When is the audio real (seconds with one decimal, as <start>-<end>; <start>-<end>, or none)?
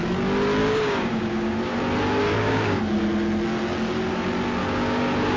0.0-0.6; 1.8-2.2; 2.8-4.6